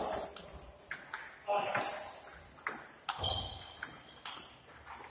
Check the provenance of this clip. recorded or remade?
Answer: recorded